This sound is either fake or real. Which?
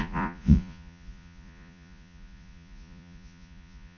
fake